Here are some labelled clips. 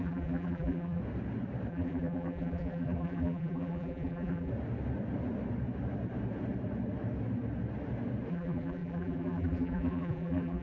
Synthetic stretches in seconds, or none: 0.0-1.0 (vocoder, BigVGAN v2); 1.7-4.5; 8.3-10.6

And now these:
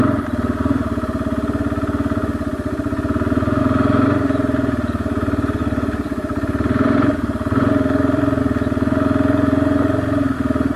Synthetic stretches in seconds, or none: 5.6-8.4 (vocoder, BigVGAN v2)

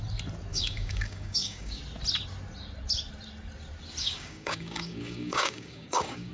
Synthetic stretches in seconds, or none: 0.5-1.8 (codec, DAC); 4.0-6.3